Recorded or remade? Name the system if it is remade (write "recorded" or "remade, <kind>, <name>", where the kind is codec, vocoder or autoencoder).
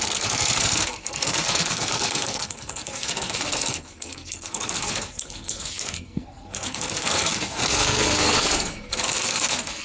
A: remade, codec, SNAC